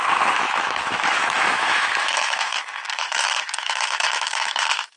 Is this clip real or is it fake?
fake